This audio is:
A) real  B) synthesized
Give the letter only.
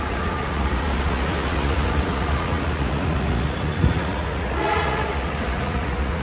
B